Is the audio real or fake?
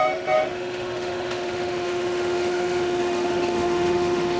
fake